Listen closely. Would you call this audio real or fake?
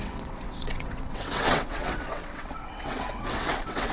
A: fake